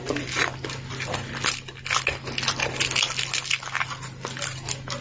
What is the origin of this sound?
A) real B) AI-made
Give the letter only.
A